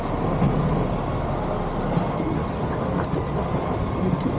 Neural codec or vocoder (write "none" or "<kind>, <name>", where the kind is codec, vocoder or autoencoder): none